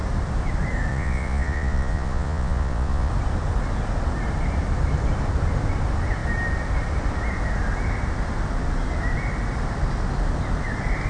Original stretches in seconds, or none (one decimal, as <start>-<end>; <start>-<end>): 0.0-0.9; 3.1-11.1